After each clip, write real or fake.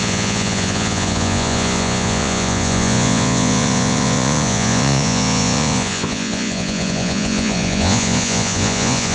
fake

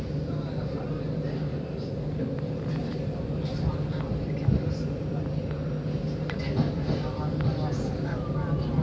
real